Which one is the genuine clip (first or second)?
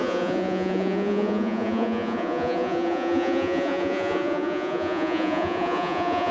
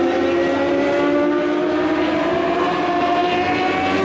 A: second